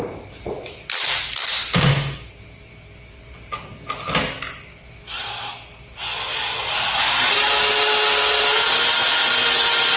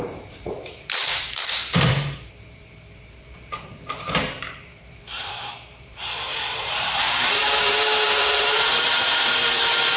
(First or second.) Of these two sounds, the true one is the first